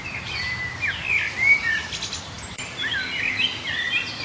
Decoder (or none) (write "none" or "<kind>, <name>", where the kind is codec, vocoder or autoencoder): none